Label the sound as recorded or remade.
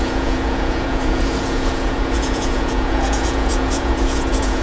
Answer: remade